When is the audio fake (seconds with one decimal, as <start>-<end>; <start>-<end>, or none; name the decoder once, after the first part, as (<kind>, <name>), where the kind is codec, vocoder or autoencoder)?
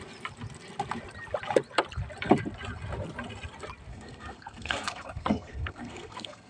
3.9-6.5 (codec, SNAC)